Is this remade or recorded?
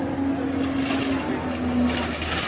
recorded